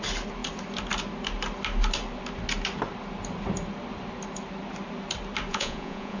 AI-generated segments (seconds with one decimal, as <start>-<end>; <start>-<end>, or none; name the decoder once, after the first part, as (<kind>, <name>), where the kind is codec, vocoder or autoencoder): 5.5-6.2 (vocoder, Vocos)